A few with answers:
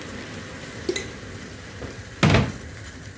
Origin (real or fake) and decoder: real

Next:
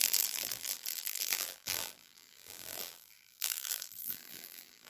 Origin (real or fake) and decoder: fake, vocoder, BigVGAN v2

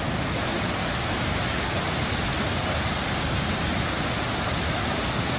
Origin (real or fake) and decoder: real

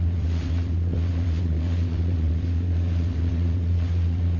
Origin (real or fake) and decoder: fake, vocoder, WaveNeXt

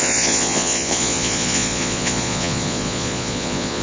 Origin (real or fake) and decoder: fake, vocoder, Vocos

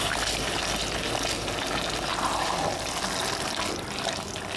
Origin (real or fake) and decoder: real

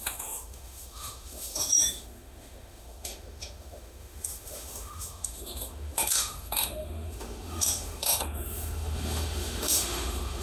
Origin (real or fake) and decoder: fake, autoencoder, DAC-VAE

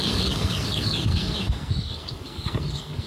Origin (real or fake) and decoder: fake, codec, SNAC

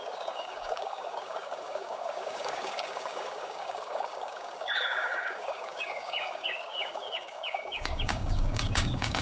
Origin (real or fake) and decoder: fake, codec, DAC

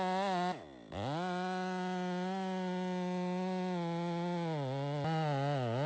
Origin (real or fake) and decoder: real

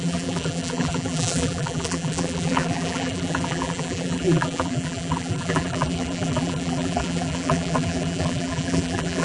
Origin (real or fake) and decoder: fake, vocoder, BigVGAN v2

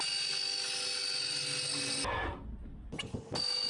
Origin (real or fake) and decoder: real